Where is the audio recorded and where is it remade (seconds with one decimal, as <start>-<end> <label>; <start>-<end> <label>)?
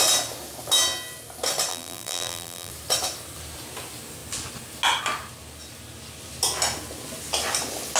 0.0-1.7 recorded; 1.7-2.7 remade; 2.7-8.0 recorded